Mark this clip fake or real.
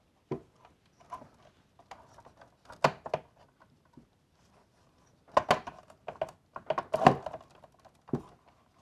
real